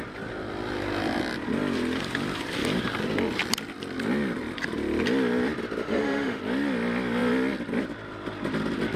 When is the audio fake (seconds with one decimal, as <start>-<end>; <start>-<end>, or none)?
5.8-6.4